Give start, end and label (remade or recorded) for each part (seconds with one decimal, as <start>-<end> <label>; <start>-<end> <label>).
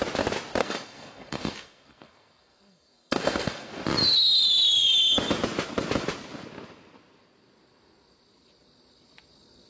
0.0-0.6 recorded; 0.6-3.8 remade; 3.8-9.7 recorded